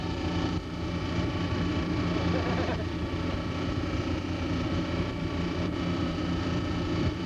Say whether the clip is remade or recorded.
remade